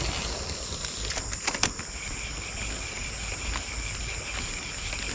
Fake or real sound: real